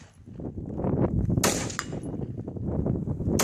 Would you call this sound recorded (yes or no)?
yes